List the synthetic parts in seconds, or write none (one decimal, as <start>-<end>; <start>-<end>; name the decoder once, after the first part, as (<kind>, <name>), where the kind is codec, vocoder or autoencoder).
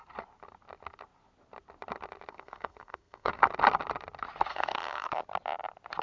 2.3-3.4 (codec, SNAC); 4.5-5.1